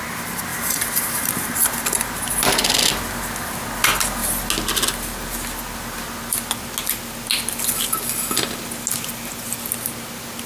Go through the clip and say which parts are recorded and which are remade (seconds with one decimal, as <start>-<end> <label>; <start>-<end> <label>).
0.0-0.5 recorded; 0.5-1.8 remade; 1.8-10.5 recorded